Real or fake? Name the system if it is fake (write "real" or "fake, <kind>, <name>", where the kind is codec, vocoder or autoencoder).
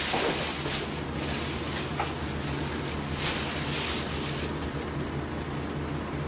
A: real